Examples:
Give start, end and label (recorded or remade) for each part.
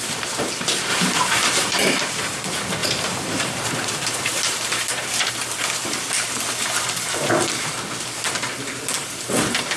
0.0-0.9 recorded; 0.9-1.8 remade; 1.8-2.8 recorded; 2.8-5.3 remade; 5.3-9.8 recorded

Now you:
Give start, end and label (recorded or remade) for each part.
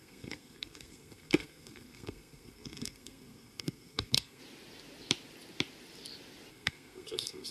0.0-4.4 remade; 4.4-6.5 recorded; 6.5-7.5 remade